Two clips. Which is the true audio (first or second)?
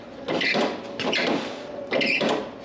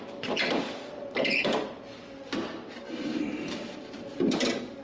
first